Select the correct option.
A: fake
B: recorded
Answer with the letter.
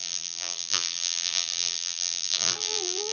A